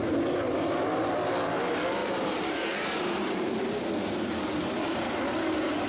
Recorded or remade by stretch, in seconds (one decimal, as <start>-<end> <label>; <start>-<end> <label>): 0.0-2.0 recorded; 2.0-3.8 remade; 3.8-5.9 recorded